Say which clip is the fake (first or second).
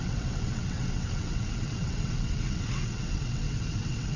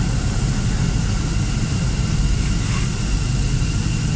first